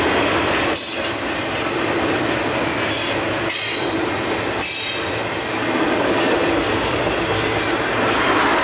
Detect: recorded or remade recorded